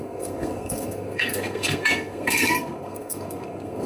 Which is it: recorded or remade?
remade